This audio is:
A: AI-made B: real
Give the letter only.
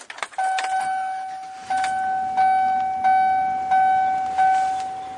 B